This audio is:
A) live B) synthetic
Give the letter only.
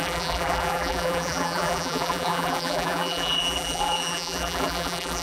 B